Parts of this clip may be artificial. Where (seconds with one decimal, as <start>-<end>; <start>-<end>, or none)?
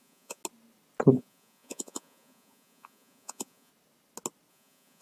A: 0.0-0.4; 1.1-3.7; 4.5-5.0